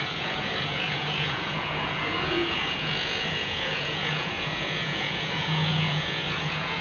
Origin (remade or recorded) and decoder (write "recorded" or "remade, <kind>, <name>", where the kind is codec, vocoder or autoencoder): remade, vocoder, Vocos